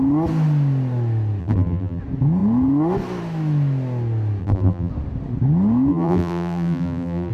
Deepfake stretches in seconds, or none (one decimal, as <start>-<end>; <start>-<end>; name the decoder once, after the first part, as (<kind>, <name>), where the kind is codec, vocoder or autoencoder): 1.4-2.0 (vocoder, BigVGAN v2); 4.4-4.9; 5.9-7.3